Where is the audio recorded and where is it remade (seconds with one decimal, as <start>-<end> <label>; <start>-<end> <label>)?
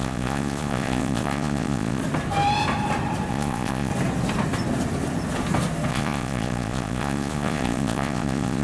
0.0-2.0 remade; 2.0-3.3 recorded; 3.3-3.9 remade; 3.9-5.9 recorded; 5.9-8.6 remade